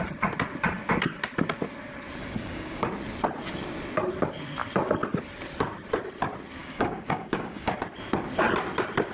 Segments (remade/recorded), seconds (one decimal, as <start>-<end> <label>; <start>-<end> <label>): 0.0-2.2 recorded; 2.2-2.9 remade; 2.9-6.6 recorded; 6.6-7.7 remade; 7.7-9.1 recorded